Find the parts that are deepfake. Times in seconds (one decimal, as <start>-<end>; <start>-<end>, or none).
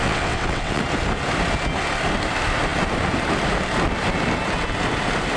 0.0-0.8